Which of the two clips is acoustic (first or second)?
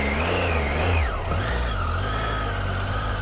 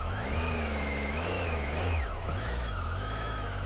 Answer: first